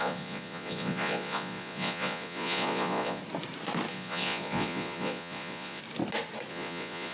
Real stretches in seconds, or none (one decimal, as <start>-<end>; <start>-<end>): 3.2-3.9; 5.8-6.5